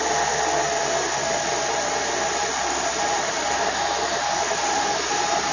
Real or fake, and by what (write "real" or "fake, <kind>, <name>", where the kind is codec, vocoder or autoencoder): real